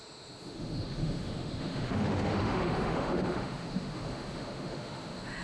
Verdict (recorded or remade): remade